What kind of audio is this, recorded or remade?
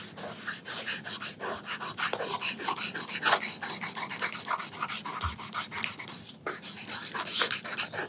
recorded